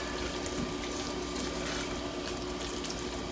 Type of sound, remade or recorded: recorded